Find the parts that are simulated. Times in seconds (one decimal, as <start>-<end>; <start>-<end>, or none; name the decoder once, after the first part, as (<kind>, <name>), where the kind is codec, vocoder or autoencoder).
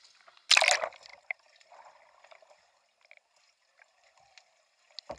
1.1-1.7 (vocoder, BigVGAN v2)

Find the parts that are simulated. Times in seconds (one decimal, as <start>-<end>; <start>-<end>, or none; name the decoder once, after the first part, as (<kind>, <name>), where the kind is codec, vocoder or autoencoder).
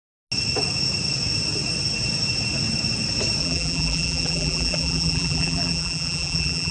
3.4-6.7 (vocoder, BigVGAN v2)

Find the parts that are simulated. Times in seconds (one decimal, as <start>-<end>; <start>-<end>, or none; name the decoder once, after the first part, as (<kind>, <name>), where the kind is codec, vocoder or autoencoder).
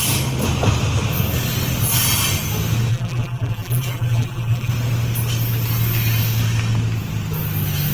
2.9-4.7 (vocoder, BigVGAN v2)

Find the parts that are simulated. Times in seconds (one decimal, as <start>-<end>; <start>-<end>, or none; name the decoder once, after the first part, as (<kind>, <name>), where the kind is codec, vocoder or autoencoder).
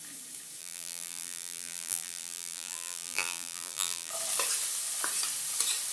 0.6-4.1 (vocoder, BigVGAN v2)